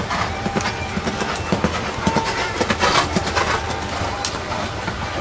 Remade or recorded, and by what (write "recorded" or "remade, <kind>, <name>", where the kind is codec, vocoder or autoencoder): recorded